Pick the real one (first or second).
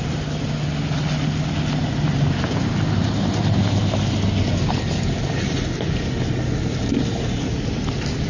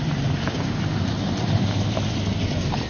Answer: first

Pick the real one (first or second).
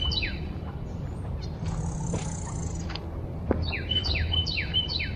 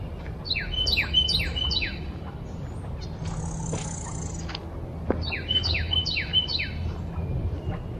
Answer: second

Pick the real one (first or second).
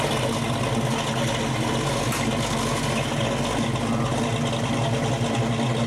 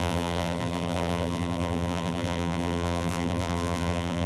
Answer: first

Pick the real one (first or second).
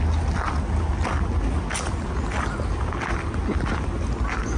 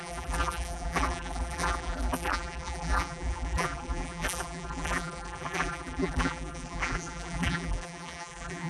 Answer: first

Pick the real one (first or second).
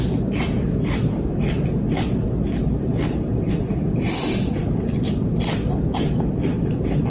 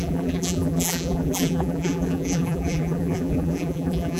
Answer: first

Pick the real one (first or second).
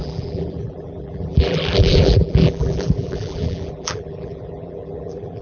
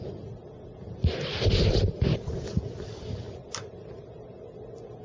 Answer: second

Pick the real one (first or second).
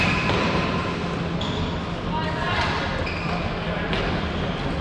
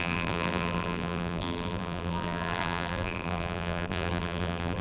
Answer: first